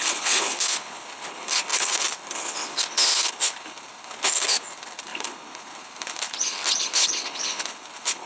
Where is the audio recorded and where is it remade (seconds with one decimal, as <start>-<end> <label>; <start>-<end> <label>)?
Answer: 0.0-8.3 remade